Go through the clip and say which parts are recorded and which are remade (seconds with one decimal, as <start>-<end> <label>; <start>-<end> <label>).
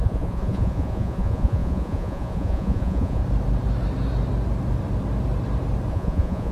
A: 0.0-3.2 remade; 3.2-5.9 recorded; 5.9-6.5 remade